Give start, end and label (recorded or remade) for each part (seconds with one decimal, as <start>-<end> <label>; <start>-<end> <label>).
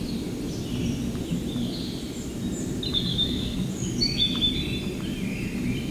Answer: 0.0-3.1 recorded; 3.1-4.0 remade; 4.0-5.9 recorded